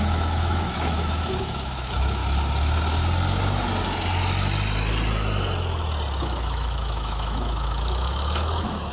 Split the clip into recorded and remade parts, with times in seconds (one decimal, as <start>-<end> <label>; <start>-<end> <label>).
0.0-2.2 remade; 2.2-6.2 recorded; 6.2-8.9 remade